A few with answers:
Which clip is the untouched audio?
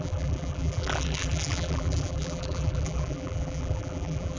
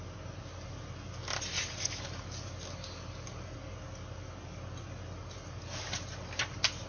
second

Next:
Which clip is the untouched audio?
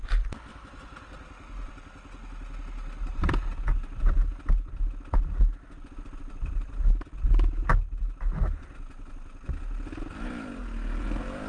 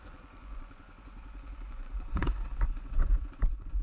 first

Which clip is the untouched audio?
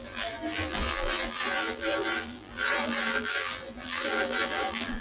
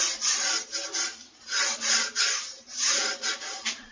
second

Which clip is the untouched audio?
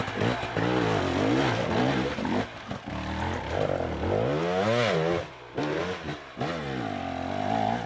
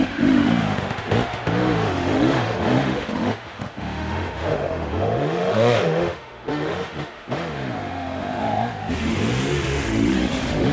first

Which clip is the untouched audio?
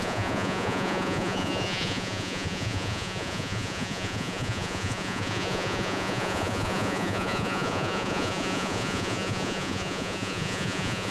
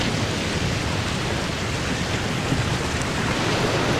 second